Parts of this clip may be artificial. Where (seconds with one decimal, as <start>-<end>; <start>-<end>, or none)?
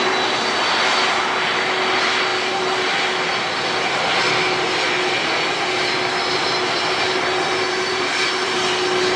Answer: 7.6-8.5